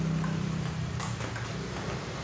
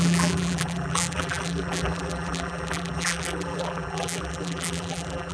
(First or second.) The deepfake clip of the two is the second